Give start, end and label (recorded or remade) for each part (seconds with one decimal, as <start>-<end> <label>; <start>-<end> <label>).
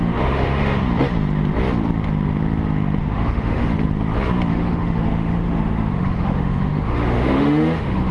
0.0-0.8 remade; 0.8-3.0 recorded; 3.0-3.7 remade; 3.7-4.5 recorded; 4.5-8.1 remade